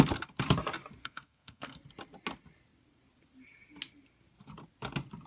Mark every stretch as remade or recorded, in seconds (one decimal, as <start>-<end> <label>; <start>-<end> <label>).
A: 0.0-1.0 recorded; 1.0-1.8 remade; 1.8-5.3 recorded